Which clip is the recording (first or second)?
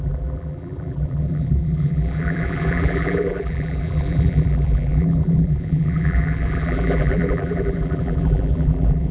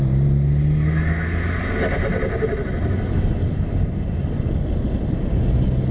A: second